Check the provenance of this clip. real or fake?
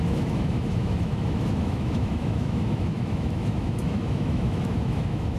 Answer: fake